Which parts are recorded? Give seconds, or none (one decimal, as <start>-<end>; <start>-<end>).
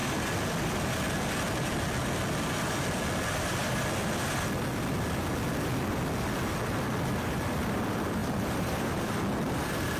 1.0-8.2; 9.2-10.0